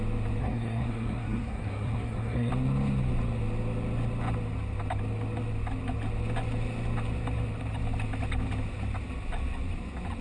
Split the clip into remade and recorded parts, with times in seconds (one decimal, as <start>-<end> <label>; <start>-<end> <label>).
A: 0.0-0.4 recorded; 0.4-2.5 remade; 2.5-10.2 recorded